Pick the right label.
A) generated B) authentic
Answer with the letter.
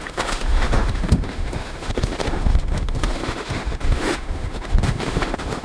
A